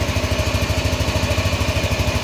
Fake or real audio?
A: real